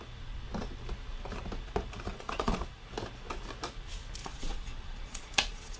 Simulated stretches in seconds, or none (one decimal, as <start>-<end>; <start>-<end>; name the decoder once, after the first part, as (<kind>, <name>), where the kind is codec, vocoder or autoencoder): 2.1-2.9 (vocoder, Vocos); 4.2-5.8